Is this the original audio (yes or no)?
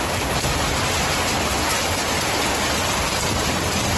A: yes